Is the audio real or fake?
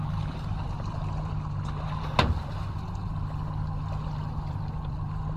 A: real